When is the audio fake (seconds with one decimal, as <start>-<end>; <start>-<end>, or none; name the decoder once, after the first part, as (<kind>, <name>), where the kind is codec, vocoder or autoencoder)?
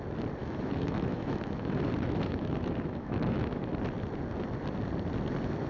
0.4-3.7 (autoencoder, DAC-VAE)